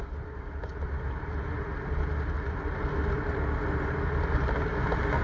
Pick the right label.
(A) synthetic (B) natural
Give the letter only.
B